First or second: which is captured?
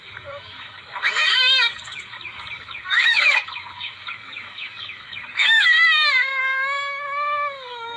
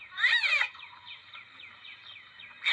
second